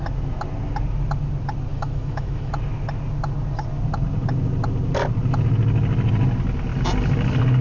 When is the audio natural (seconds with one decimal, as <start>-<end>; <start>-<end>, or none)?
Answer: 0.0-1.7; 2.5-7.6